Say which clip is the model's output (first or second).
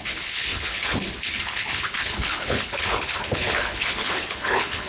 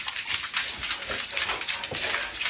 first